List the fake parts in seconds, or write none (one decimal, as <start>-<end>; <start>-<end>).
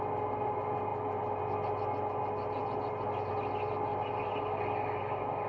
none